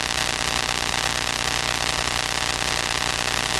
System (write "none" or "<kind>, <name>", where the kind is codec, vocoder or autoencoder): none